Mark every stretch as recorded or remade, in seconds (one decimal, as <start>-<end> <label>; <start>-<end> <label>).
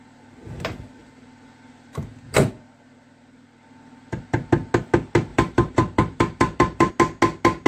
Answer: 0.0-1.0 recorded; 1.0-2.5 remade; 2.5-5.3 recorded; 5.3-6.9 remade; 6.9-7.7 recorded